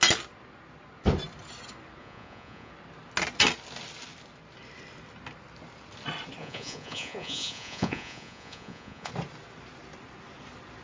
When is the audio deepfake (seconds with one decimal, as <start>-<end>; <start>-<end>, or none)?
2.0-2.7; 6.4-9.1